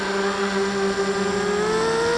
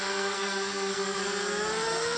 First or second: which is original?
first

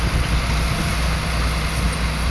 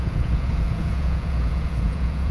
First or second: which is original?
first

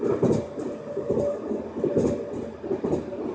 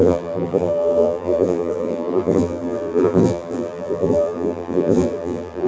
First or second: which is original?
first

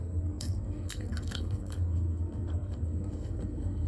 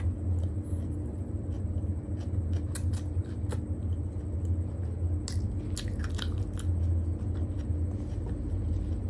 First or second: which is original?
second